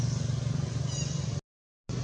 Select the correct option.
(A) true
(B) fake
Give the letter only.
A